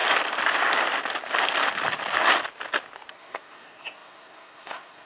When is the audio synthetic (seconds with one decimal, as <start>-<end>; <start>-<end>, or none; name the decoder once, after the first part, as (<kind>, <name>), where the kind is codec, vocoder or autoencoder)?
3.1-5.1 (codec, SNAC)